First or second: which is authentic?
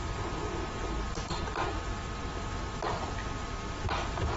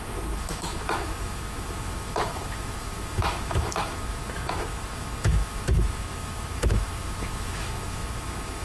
first